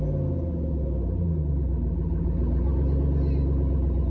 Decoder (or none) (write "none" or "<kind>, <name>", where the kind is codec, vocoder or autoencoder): none